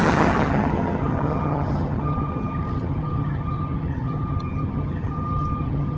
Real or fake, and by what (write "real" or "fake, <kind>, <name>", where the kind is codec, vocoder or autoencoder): fake, vocoder, HiFi-GAN